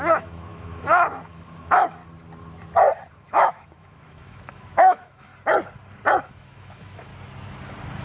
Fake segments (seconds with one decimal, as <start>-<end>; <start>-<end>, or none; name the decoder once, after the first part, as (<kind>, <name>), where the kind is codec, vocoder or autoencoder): 0.0-2.0 (autoencoder, DAC-VAE); 3.1-5.3; 6.2-7.1